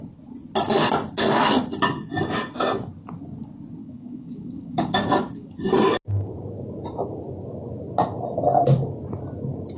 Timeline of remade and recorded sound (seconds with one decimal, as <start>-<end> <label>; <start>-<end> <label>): 0.0-3.8 recorded; 3.8-5.7 remade; 5.7-9.8 recorded